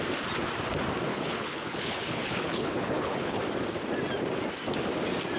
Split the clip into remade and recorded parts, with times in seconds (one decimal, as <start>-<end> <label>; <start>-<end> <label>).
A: 0.0-1.1 recorded; 1.1-3.4 remade; 3.4-5.4 recorded